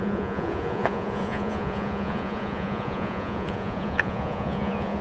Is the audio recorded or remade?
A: remade